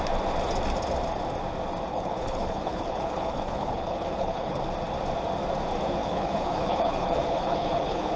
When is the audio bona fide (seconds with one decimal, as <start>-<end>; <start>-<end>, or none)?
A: 0.0-1.9; 4.6-6.0